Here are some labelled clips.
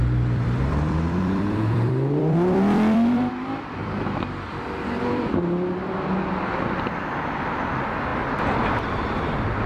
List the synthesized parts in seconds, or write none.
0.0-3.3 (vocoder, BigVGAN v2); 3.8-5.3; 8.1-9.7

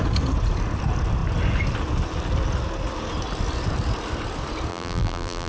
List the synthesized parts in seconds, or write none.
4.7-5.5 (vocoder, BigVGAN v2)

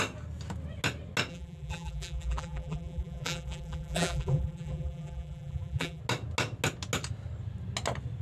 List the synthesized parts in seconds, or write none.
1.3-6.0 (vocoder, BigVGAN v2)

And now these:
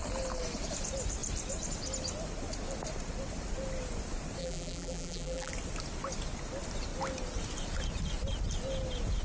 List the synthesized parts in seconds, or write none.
4.4-5.5 (vocoder, BigVGAN v2)

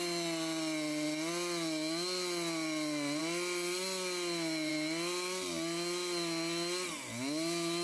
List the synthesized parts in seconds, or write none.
none

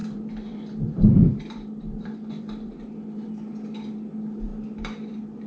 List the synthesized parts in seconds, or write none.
0.0-3.3 (vocoder, BigVGAN v2)

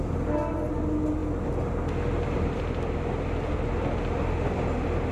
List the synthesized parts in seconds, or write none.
none

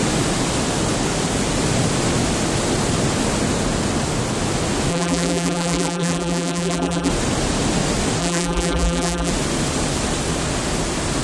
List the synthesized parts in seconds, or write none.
4.9-7.1 (vocoder, BigVGAN v2); 8.2-9.3